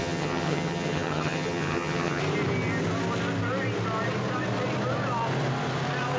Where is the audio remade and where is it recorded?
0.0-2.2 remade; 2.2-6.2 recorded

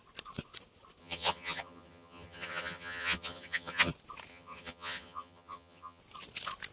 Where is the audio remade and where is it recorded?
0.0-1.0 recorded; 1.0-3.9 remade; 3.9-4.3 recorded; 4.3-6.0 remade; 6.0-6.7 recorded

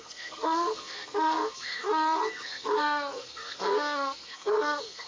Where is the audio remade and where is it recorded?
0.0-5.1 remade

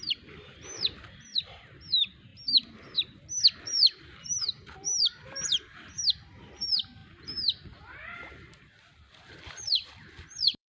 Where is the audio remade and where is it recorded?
0.0-2.3 remade; 2.3-3.6 recorded; 3.6-7.0 remade; 7.0-8.3 recorded; 8.3-10.7 remade

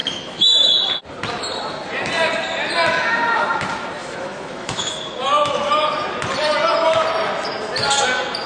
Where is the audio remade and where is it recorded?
0.0-0.7 remade; 0.7-4.0 recorded; 4.0-4.9 remade; 4.9-8.5 recorded

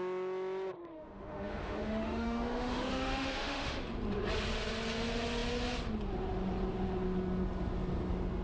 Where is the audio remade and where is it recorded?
0.0-0.8 recorded; 0.8-3.8 remade; 3.8-8.4 recorded

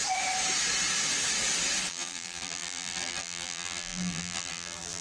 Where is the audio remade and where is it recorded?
0.0-1.9 recorded; 1.9-5.0 remade

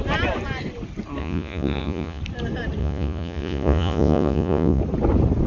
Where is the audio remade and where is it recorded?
0.0-1.2 recorded; 1.2-2.2 remade; 2.2-2.8 recorded; 2.8-4.8 remade; 4.8-5.5 recorded